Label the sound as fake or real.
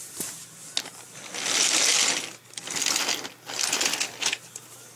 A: real